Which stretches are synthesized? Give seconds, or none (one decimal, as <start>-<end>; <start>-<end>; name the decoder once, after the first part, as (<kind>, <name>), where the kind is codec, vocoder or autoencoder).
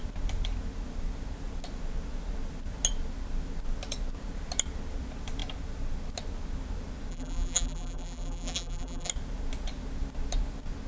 7.1-9.1 (vocoder, BigVGAN v2)